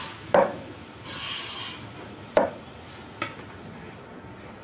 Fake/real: real